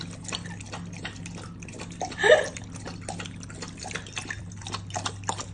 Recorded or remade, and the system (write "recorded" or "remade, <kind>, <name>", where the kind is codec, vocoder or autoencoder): recorded